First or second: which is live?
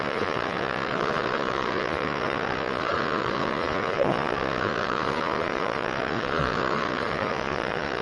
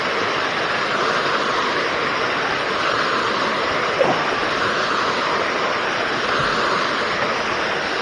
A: second